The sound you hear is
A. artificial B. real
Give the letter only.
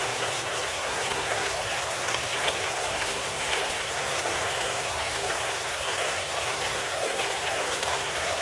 A